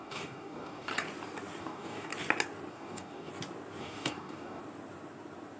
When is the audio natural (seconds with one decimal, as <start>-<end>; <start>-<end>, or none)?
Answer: 0.9-1.6; 2.1-2.7; 3.3-3.8; 4.6-5.6